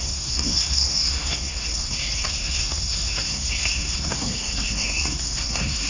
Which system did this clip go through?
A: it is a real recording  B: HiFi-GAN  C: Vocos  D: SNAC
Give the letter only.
D